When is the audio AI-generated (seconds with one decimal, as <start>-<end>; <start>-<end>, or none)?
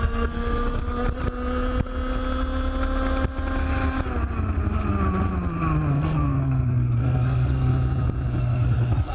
0.0-0.8; 5.9-7.7; 8.4-9.1